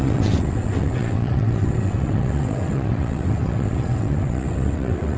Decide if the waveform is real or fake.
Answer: fake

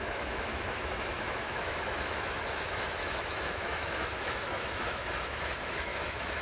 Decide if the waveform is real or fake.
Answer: fake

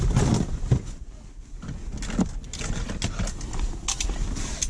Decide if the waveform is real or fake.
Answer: real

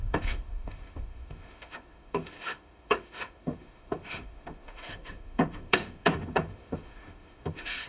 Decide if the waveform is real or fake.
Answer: fake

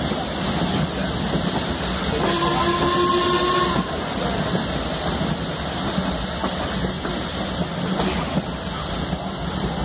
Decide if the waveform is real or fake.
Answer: real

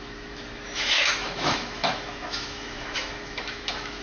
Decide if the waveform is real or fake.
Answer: fake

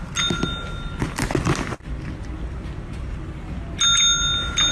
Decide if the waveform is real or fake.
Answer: real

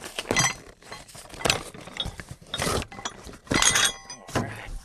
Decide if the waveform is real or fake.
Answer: real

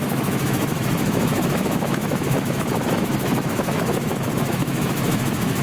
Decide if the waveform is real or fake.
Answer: fake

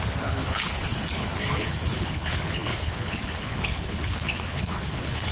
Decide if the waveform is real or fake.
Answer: fake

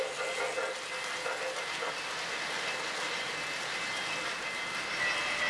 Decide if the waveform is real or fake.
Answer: real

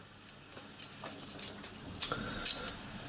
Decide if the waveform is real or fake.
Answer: real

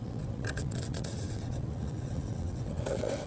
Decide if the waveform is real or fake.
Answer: fake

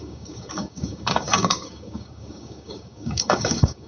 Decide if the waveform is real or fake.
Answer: fake